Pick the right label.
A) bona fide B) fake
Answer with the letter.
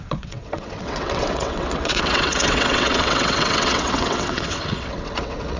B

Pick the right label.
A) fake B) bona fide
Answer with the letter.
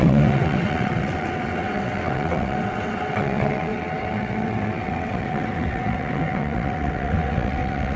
A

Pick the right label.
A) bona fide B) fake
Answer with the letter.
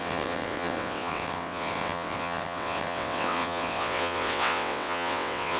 B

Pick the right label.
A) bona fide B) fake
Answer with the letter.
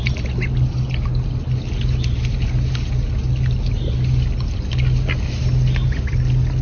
A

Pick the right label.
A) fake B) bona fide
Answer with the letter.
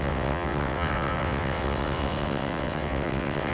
A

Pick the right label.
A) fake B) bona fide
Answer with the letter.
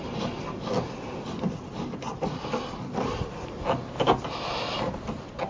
B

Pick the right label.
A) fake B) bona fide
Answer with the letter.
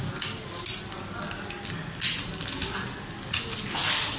B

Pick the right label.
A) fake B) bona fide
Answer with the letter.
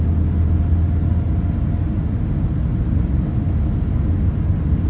B